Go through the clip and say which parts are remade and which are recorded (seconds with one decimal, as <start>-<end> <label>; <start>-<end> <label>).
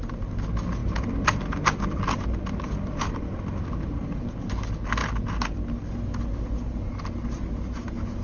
0.0-8.2 recorded